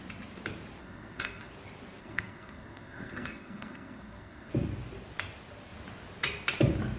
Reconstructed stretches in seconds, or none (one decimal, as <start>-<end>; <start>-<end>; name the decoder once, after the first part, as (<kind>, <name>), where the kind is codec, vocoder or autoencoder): 0.8-1.5 (codec, SNAC); 2.0-4.5